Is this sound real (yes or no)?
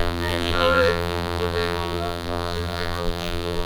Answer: no